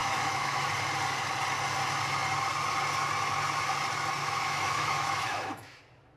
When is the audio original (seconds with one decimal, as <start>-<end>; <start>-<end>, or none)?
0.7-4.2; 5.8-6.2